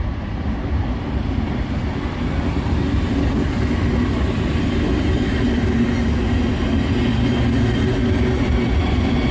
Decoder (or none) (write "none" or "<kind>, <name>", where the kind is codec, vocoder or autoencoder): none